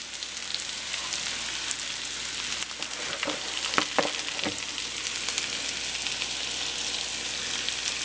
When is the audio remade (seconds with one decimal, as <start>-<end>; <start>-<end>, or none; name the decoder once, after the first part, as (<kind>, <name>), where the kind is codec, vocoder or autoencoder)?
0.5-1.0 (vocoder, BigVGAN v2)